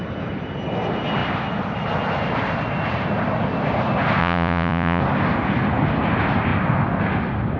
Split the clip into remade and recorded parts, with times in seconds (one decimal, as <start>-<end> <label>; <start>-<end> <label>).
0.0-4.2 recorded; 4.2-5.0 remade; 5.0-7.6 recorded